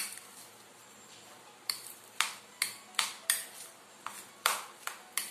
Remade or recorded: recorded